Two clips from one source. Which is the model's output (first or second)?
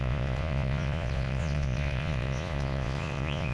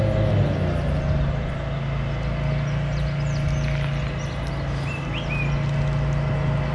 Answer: first